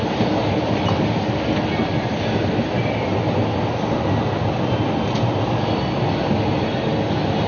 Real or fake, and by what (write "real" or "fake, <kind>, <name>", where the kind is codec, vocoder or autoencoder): real